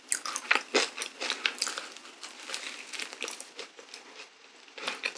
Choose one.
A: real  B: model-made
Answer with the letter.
A